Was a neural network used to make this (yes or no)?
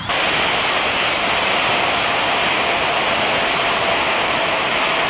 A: no